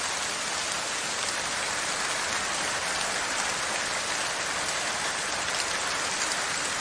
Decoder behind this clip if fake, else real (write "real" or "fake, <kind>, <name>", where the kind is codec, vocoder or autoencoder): real